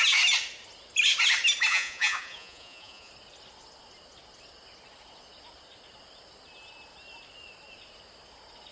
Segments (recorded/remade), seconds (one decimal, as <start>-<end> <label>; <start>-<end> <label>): 0.0-1.7 recorded; 1.7-3.1 remade; 3.1-8.7 recorded